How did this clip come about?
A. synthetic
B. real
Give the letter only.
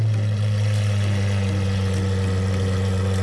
B